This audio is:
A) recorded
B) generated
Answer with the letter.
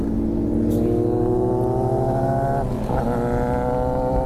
A